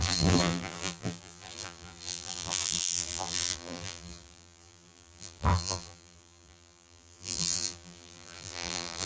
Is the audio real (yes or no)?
no